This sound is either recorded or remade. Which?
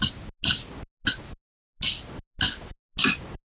recorded